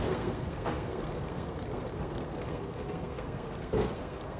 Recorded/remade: remade